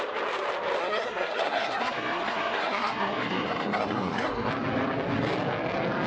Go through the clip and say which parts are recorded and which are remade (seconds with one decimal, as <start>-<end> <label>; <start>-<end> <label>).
0.0-0.8 recorded; 0.8-4.5 remade; 4.5-6.1 recorded